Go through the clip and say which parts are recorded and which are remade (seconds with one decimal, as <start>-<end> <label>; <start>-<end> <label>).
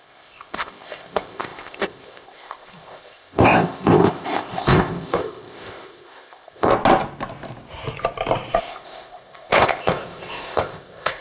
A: 0.0-6.7 remade; 6.7-8.6 recorded; 8.6-11.2 remade